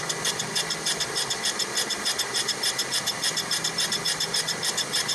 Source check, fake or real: real